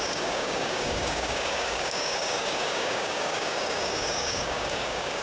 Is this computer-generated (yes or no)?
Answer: yes